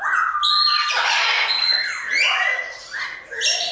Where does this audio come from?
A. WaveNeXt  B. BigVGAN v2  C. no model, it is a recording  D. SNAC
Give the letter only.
C